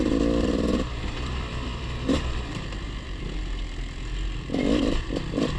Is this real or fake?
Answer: fake